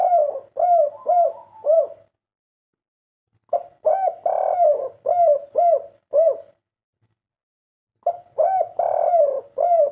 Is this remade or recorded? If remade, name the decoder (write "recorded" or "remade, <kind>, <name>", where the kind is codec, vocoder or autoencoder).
recorded